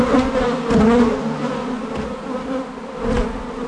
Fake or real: real